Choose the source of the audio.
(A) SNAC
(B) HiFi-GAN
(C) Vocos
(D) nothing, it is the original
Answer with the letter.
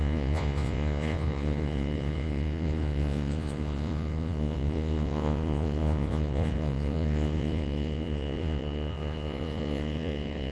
C